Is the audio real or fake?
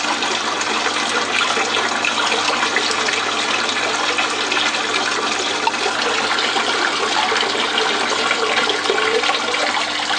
real